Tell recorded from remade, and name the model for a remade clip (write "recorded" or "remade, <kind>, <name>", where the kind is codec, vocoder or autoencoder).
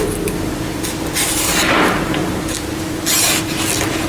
recorded